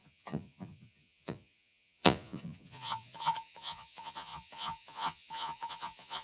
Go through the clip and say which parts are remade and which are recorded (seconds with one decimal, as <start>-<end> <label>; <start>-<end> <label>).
0.0-6.2 remade